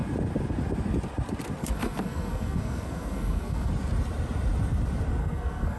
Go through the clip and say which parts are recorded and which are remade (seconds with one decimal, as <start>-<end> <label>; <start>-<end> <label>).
0.0-1.6 recorded; 1.6-3.7 remade; 3.7-5.2 recorded; 5.2-5.8 remade